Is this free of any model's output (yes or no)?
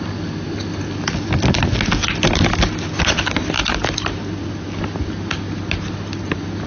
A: yes